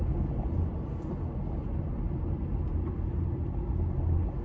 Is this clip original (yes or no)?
yes